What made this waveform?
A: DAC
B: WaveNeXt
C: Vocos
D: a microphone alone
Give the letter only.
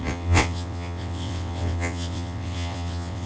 B